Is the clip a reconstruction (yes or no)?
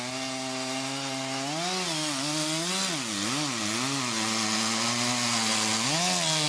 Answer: no